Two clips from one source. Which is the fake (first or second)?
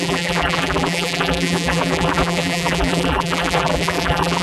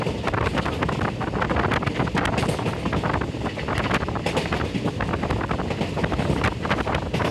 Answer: first